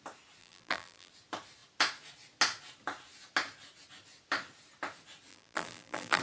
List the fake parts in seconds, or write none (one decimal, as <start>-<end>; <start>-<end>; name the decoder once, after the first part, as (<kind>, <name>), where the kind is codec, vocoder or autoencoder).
0.4-1.1 (vocoder, BigVGAN v2); 5.3-6.2